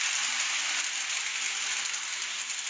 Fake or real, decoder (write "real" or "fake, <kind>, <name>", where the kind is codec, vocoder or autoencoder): real